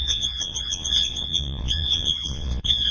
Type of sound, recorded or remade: remade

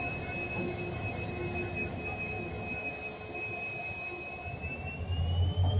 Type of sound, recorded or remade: recorded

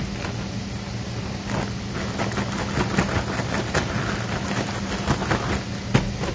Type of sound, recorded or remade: recorded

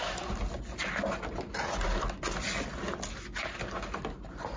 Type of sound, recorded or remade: recorded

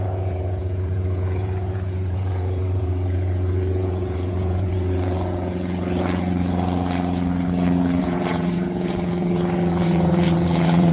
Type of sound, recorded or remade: remade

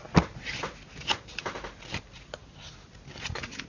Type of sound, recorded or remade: recorded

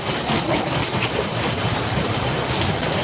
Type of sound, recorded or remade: recorded